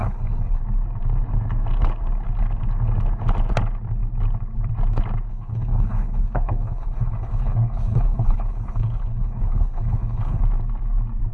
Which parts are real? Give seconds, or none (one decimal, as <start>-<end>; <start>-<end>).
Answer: 0.6-5.3; 10.4-11.3